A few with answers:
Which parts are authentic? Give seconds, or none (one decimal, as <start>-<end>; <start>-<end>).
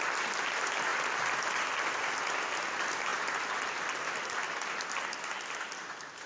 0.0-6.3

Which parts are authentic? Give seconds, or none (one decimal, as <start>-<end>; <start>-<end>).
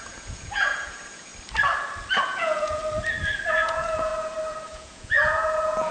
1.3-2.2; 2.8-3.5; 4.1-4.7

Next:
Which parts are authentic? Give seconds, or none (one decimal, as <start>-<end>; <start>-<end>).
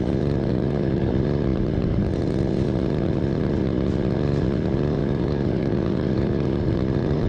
0.0-0.5; 1.1-5.0; 6.7-7.3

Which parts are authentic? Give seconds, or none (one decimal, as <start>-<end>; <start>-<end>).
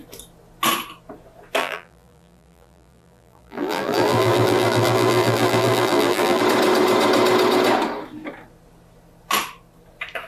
0.0-1.6; 6.4-10.3